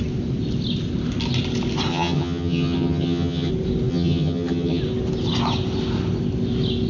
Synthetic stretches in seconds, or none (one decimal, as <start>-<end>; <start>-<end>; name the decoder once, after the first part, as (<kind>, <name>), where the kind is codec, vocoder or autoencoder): 1.9-3.5 (vocoder, HiFi-GAN); 3.9-4.8